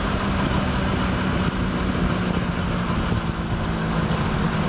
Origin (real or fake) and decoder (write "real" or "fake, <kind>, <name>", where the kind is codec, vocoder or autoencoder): real